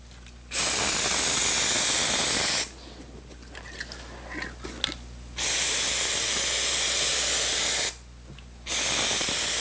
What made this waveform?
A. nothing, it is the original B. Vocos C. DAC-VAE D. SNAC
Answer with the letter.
A